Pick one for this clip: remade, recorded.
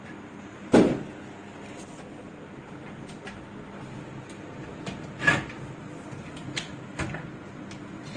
recorded